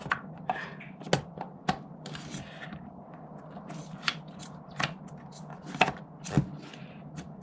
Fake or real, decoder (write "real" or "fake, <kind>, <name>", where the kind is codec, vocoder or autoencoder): real